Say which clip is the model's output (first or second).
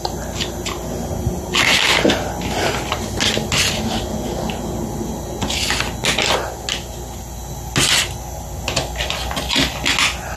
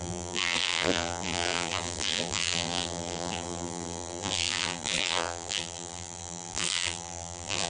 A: second